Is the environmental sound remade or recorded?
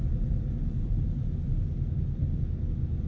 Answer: recorded